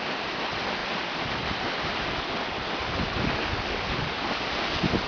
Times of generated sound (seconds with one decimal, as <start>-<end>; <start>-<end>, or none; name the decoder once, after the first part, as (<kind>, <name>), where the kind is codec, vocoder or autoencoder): none